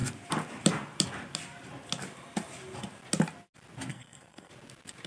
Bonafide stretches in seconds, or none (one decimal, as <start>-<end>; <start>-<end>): 0.0-3.9; 4.5-5.1